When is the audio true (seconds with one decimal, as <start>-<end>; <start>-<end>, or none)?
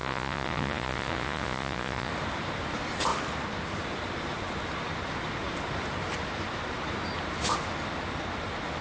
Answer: 2.1-8.8